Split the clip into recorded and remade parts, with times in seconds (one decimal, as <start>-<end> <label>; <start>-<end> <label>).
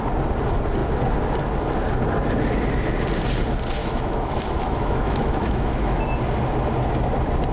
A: 0.0-3.8 recorded; 3.8-6.0 remade; 6.0-7.5 recorded